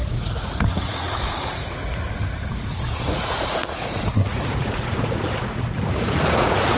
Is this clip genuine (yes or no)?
no